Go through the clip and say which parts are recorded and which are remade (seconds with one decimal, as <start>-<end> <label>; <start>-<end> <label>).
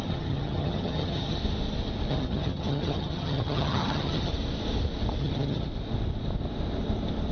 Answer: 0.0-1.4 remade; 1.4-2.1 recorded; 2.1-4.3 remade; 4.3-5.2 recorded; 5.2-5.7 remade; 5.7-7.3 recorded